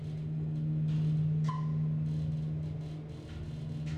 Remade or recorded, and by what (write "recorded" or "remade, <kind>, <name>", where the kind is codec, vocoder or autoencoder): recorded